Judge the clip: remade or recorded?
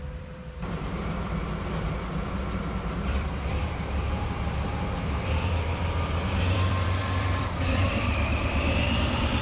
remade